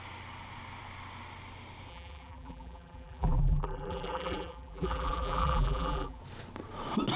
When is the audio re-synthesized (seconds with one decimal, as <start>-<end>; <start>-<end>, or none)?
1.9-6.2